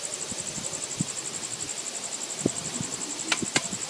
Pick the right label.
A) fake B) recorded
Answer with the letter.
B